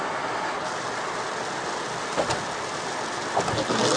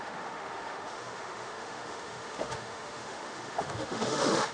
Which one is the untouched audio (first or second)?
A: first